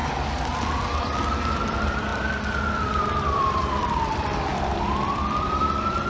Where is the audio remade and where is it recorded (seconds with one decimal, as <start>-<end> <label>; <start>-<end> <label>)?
0.0-1.0 recorded; 1.0-6.1 remade